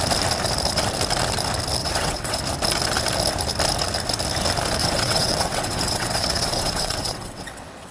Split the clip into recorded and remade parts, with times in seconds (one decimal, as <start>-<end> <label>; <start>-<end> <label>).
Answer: 0.0-1.8 recorded; 1.8-2.4 remade; 2.4-4.8 recorded; 4.8-7.9 remade